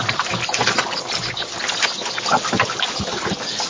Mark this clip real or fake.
real